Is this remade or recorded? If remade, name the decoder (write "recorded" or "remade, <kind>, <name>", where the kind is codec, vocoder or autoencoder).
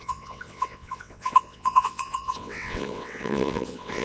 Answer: remade, vocoder, WaveNeXt